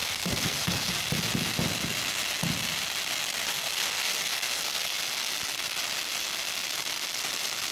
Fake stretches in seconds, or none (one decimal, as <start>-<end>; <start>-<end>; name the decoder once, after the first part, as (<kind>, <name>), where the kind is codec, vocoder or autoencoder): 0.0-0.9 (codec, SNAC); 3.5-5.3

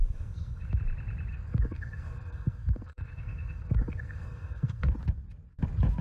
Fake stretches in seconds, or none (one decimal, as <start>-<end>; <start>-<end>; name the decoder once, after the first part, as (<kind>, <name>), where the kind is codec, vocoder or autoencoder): 0.0-0.8 (codec, SNAC); 1.3-4.9

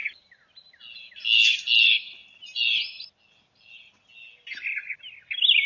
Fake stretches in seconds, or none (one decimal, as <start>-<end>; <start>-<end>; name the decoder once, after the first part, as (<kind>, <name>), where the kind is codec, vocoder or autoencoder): 0.0-0.8 (vocoder, BigVGAN v2)